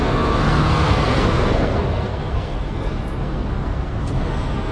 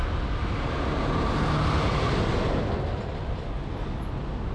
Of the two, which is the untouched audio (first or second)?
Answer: second